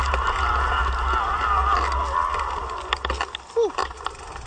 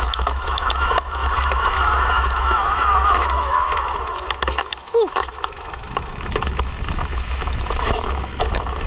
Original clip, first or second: first